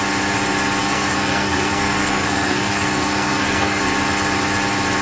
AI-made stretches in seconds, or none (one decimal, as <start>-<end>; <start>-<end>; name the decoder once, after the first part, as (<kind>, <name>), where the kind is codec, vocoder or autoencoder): 0.8-3.8 (codec, SNAC)